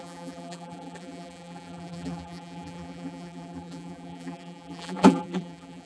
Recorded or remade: remade